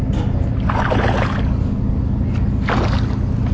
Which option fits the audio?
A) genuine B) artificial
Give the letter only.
A